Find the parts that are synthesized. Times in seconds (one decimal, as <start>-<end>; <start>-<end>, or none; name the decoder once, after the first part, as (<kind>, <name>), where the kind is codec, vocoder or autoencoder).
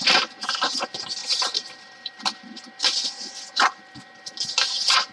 1.2-2.8 (vocoder, BigVGAN v2)